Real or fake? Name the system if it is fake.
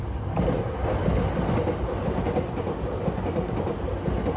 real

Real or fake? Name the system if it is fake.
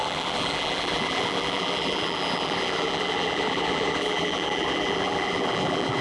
fake, vocoder, BigVGAN v2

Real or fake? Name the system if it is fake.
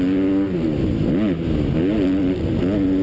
real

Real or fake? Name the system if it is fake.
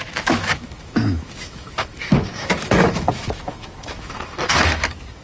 fake, autoencoder, DAC-VAE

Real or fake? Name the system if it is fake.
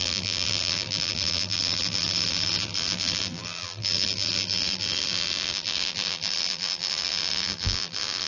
fake, vocoder, BigVGAN v2